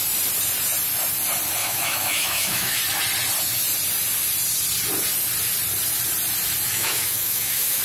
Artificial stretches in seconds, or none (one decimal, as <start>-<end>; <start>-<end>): 1.6-2.8; 6.7-7.8